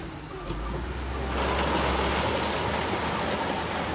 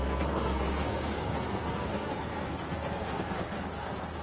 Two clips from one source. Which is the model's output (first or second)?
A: second